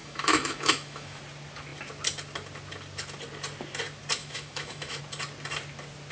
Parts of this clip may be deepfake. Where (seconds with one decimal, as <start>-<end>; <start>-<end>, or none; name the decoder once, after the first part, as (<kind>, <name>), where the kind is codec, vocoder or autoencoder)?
0.0-1.2 (autoencoder, DAC-VAE); 4.2-5.0